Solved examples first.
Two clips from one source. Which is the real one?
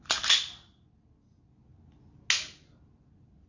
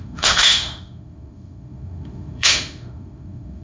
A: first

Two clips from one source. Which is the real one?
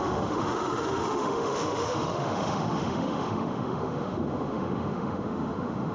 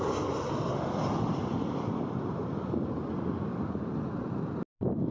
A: second